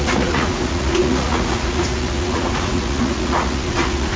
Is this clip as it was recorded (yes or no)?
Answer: no